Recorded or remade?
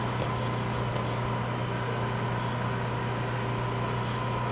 recorded